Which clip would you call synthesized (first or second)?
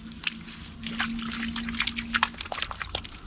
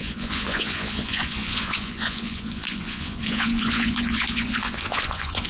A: second